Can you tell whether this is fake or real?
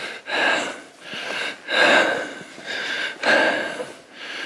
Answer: real